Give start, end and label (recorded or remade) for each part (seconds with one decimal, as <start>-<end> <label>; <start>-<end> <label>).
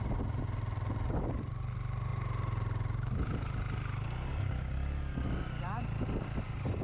0.0-6.8 recorded